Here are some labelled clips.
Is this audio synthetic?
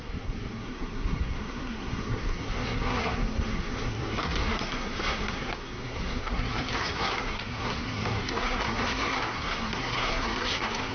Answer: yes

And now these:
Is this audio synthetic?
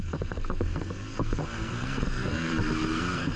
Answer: yes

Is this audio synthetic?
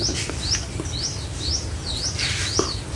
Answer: no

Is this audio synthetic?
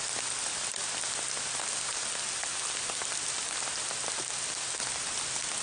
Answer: no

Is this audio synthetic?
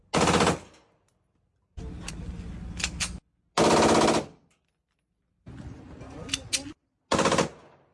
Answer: no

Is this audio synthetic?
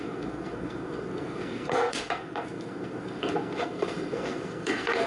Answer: yes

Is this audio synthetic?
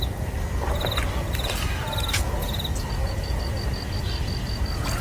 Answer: no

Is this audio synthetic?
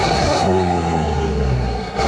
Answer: yes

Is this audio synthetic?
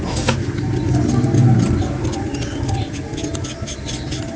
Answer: no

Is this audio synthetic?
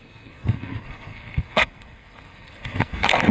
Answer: yes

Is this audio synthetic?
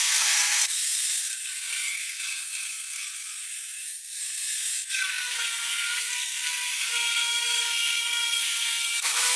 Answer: yes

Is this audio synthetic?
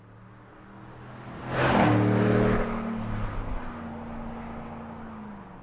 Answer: no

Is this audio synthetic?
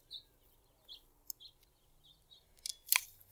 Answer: no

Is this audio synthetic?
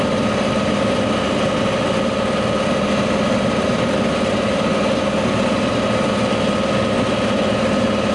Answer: no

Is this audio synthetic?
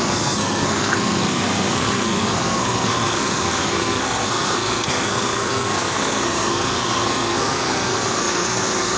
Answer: yes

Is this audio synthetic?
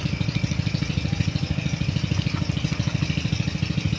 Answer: no